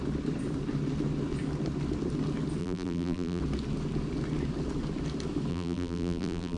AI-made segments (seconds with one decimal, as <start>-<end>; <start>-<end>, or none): 2.6-3.4; 5.5-6.6